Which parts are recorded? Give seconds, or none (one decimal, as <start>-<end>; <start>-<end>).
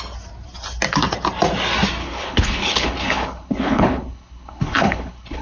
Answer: 0.0-2.0